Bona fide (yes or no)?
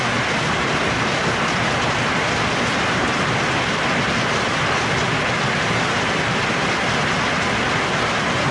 yes